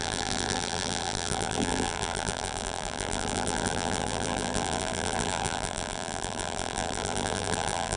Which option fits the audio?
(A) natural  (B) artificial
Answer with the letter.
B